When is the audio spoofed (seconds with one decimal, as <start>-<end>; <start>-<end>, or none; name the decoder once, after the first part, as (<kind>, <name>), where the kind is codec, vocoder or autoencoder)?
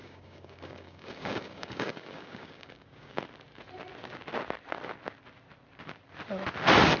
0.0-3.2 (codec, DAC)